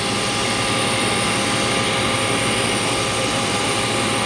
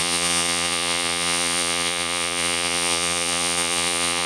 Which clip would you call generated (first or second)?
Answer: second